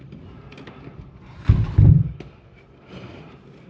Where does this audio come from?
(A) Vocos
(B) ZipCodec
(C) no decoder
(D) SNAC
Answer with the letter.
C